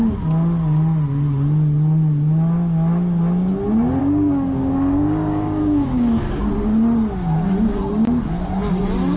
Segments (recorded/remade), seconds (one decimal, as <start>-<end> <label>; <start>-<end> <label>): 0.0-4.0 recorded; 4.0-6.5 remade; 6.5-9.2 recorded

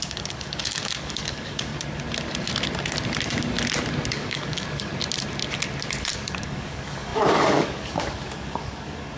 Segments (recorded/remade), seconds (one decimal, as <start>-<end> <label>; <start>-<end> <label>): 0.0-1.7 remade; 1.7-4.1 recorded; 4.1-4.9 remade; 4.9-6.0 recorded; 6.0-9.2 remade

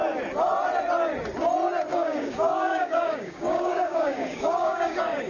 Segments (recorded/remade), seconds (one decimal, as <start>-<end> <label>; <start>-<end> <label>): 0.0-1.9 recorded; 1.9-5.3 remade

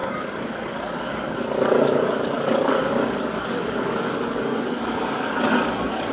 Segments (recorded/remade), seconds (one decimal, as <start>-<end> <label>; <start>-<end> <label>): 0.0-6.1 remade

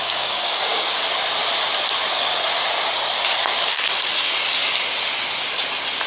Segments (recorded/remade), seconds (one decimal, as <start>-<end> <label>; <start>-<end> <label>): 0.0-0.9 remade; 0.9-6.1 recorded